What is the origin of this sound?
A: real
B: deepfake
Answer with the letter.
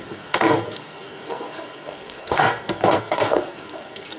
B